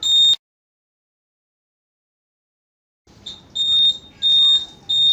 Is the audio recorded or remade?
recorded